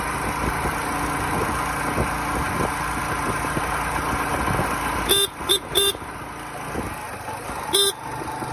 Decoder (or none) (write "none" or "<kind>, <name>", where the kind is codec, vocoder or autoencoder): none